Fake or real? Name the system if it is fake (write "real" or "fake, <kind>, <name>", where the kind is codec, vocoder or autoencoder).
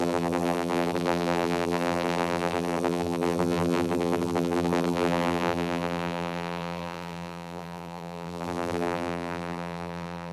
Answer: fake, vocoder, BigVGAN v2